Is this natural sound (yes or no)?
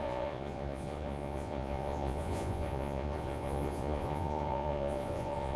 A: no